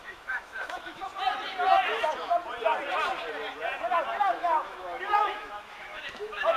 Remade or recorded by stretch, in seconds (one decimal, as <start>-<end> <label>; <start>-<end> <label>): 0.0-1.1 remade; 1.1-4.2 recorded; 4.2-6.6 remade